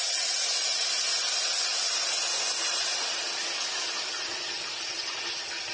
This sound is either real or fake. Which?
real